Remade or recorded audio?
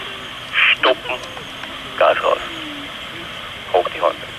recorded